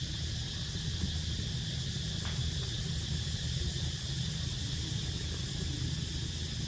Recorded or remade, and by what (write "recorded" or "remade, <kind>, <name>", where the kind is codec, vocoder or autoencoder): recorded